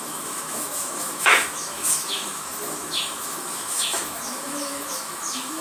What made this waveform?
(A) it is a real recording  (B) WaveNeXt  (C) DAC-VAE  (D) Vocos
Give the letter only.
C